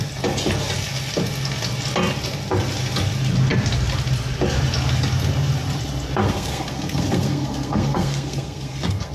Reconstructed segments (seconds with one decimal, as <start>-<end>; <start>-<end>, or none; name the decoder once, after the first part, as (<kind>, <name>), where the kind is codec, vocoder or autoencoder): 6.2-9.1 (codec, SNAC)